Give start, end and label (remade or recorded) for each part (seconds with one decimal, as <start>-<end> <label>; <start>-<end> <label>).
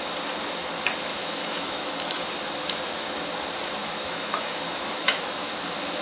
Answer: 0.0-1.1 recorded; 1.1-2.3 remade; 2.3-3.8 recorded; 3.8-5.5 remade; 5.5-6.0 recorded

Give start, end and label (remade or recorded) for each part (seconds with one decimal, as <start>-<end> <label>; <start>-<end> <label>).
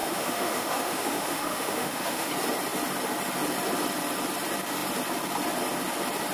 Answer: 0.0-2.3 remade; 2.3-6.3 recorded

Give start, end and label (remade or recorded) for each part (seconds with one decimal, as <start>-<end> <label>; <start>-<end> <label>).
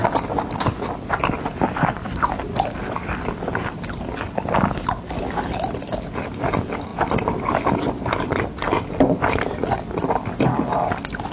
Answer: 0.0-11.3 recorded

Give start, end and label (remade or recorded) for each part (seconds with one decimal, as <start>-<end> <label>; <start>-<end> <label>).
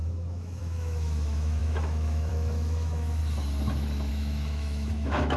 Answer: 0.0-3.2 remade; 3.2-4.1 recorded; 4.1-5.4 remade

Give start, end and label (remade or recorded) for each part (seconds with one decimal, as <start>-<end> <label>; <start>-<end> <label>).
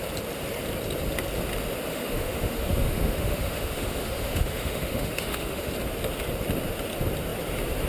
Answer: 0.0-1.9 recorded; 1.9-5.7 remade; 5.7-7.9 recorded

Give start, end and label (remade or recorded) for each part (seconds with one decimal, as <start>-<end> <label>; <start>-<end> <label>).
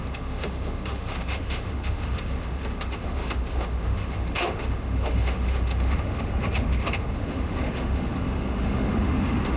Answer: 0.0-9.6 remade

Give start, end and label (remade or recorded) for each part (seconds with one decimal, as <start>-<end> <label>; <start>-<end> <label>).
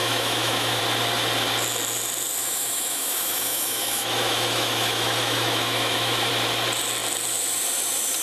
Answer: 0.0-0.8 remade; 0.8-2.4 recorded; 2.4-6.3 remade; 6.3-8.2 recorded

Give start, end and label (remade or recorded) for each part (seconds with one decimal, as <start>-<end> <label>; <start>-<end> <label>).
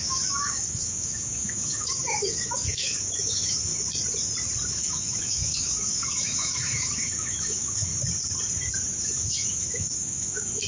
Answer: 0.0-3.7 remade; 3.7-4.7 recorded; 4.7-7.9 remade; 7.9-9.0 recorded; 9.0-10.7 remade